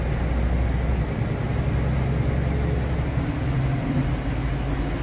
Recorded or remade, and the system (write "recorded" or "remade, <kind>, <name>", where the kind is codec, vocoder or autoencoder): recorded